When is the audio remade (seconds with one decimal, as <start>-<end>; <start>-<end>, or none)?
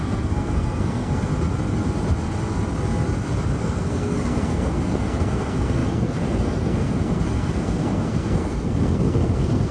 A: 0.0-1.3; 3.6-9.7